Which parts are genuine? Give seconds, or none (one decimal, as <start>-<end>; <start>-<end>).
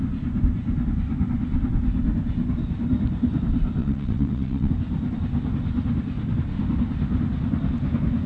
0.0-3.8; 4.7-8.3